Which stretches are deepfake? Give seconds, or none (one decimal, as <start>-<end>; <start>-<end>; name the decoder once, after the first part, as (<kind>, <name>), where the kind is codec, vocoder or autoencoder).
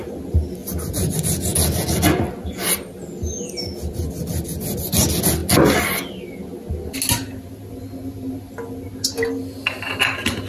0.6-1.1 (vocoder, BigVGAN v2)